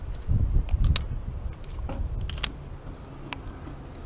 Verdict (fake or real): real